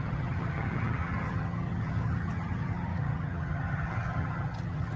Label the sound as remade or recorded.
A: remade